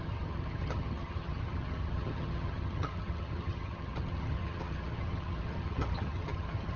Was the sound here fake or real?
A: fake